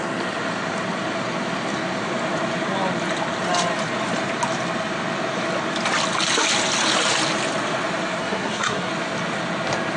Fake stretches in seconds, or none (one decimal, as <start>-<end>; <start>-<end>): 8.2-8.9